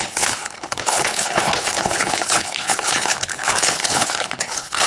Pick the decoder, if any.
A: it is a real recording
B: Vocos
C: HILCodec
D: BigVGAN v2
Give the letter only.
C